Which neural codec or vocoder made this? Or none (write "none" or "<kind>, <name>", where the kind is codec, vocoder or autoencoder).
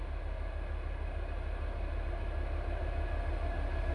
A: none